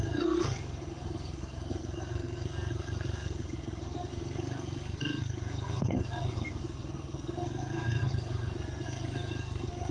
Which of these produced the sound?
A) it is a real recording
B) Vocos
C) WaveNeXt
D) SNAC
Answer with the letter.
D